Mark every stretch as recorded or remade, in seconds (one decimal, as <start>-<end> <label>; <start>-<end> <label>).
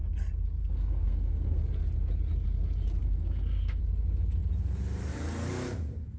0.0-0.6 recorded; 0.6-1.6 remade; 1.6-3.0 recorded; 3.0-3.8 remade; 3.8-6.2 recorded